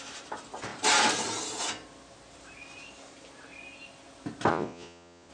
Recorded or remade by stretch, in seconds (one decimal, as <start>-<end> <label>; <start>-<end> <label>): 0.0-4.5 recorded; 4.5-5.3 remade